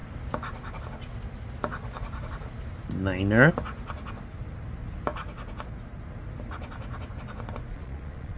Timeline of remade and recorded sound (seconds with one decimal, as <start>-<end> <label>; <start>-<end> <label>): 0.0-7.7 recorded; 7.7-8.4 remade